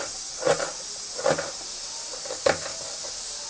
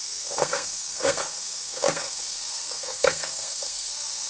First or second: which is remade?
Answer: second